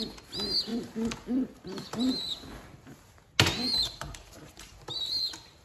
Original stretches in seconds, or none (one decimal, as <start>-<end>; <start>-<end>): 0.0-3.8; 4.7-5.6